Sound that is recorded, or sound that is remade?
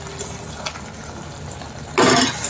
recorded